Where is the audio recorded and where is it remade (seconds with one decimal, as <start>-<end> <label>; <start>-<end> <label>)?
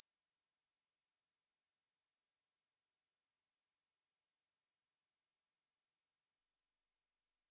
0.0-6.4 recorded; 6.4-7.5 remade